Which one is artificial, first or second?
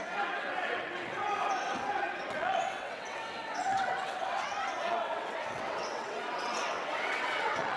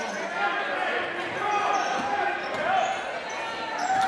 first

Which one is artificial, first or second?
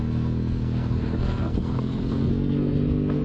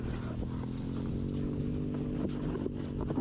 first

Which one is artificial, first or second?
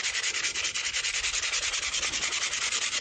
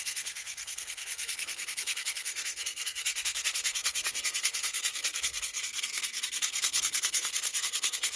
second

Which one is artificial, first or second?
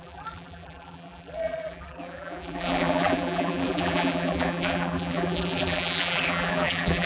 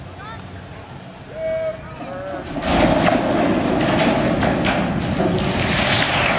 first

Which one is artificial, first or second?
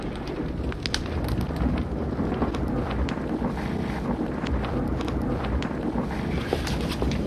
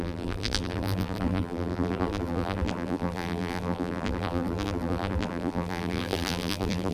second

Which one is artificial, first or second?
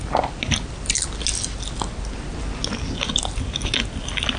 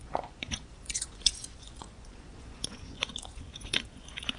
second